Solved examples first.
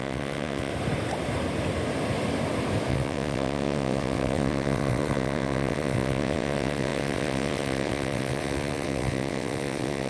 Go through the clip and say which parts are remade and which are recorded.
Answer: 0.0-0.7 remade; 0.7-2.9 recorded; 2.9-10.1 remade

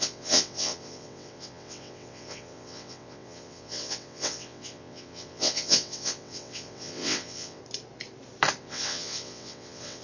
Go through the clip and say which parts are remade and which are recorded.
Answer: 0.0-7.6 remade; 7.6-8.6 recorded; 8.6-10.0 remade

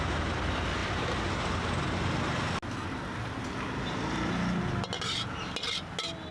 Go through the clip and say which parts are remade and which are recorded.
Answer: 0.0-6.3 recorded

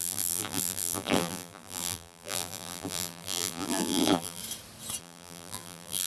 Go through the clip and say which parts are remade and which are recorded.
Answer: 0.0-4.4 remade; 4.4-5.0 recorded; 5.0-6.1 remade